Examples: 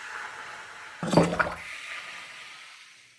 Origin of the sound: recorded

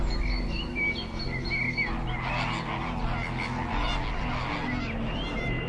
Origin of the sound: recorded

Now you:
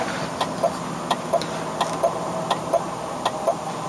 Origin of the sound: recorded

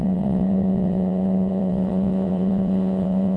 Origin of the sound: remade